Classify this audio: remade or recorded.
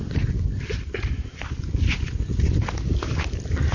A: recorded